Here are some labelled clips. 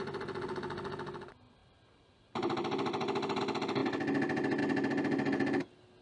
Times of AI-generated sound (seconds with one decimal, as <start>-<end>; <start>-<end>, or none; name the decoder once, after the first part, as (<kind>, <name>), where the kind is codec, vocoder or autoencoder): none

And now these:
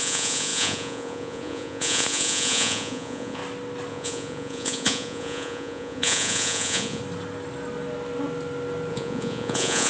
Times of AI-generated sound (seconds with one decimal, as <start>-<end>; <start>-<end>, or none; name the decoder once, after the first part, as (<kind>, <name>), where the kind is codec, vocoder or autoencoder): 0.0-3.4 (vocoder, Vocos); 3.9-7.0; 8.9-9.9

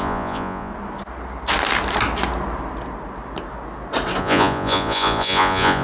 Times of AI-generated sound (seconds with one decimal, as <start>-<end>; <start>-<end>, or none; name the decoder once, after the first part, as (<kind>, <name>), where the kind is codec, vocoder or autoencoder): 0.0-0.7 (vocoder, Vocos); 4.2-5.8

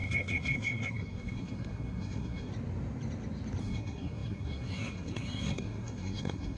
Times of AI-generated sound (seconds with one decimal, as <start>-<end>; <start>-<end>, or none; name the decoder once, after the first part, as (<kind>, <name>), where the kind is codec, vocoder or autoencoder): 0.0-2.5 (codec, SNAC); 3.6-6.6